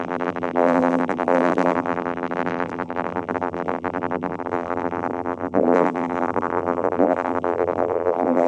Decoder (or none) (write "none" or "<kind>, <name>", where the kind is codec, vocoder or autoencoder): vocoder, BigVGAN v2